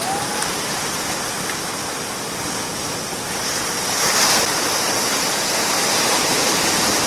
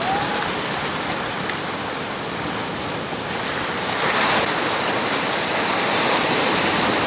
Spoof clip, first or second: second